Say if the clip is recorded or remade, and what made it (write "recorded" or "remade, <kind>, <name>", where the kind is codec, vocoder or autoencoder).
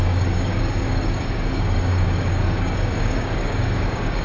remade, codec, DAC